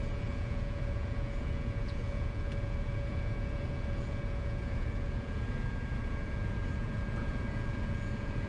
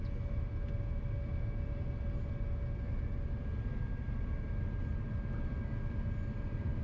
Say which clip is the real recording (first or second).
second